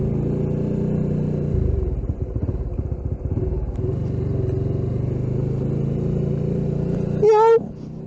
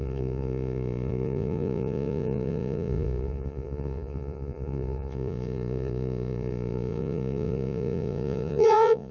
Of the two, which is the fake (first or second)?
second